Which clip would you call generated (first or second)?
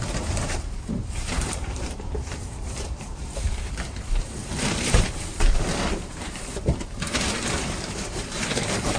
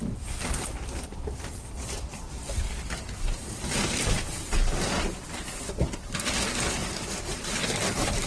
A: first